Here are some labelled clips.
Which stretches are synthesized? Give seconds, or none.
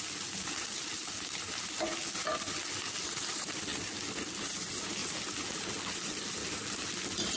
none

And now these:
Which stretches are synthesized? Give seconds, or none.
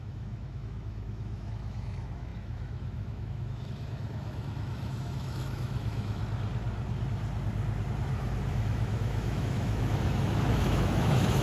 0.0-6.2 (autoencoder, DAC-VAE); 8.5-11.4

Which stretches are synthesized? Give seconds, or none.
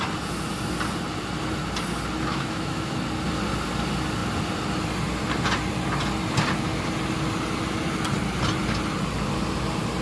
2.3-3.0 (autoencoder, DAC-VAE)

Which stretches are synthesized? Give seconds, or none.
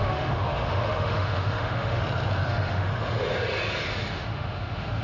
0.0-2.0 (autoencoder, DAC-VAE); 2.5-2.9; 4.1-5.0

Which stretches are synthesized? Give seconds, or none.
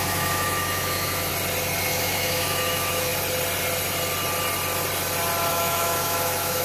0.0-1.3 (autoencoder, DAC-VAE); 1.9-3.1; 5.5-6.6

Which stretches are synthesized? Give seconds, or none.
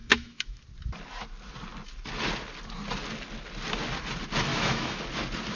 0.0-0.6 (autoencoder, DAC-VAE); 4.5-5.0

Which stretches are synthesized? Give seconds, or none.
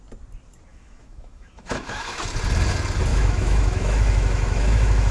0.7-2.2 (autoencoder, DAC-VAE); 3.1-5.1